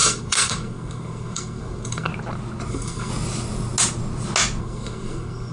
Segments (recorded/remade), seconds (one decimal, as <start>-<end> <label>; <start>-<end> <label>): 0.0-2.1 remade; 2.1-2.7 recorded; 2.7-3.1 remade; 3.1-4.6 recorded; 4.6-5.5 remade